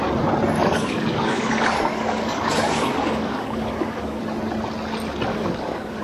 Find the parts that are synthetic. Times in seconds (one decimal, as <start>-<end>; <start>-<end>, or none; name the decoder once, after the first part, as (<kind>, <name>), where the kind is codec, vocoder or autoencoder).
0.6-4.2 (codec, DAC); 5.3-6.0